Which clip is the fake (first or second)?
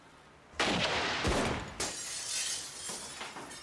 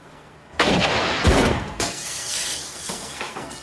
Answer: second